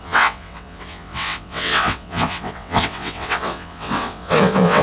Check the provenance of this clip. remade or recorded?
remade